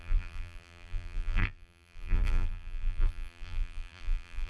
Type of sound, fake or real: fake